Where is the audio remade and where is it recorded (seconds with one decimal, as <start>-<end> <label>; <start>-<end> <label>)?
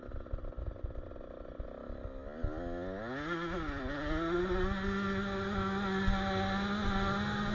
0.0-7.5 recorded